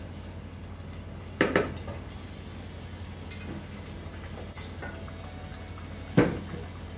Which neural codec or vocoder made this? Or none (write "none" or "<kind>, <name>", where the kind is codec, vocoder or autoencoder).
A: none